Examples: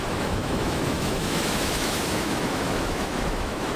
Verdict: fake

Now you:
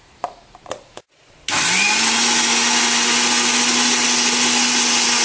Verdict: real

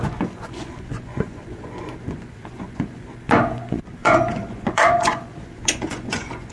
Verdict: fake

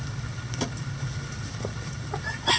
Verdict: real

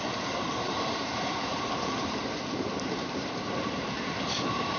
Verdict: fake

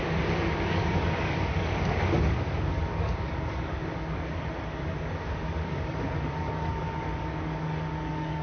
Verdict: fake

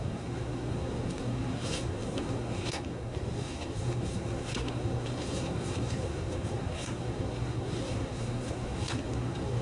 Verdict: fake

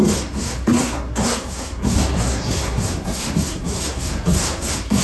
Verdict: fake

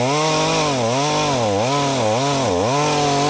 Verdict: real